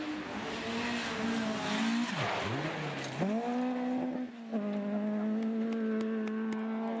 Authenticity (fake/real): real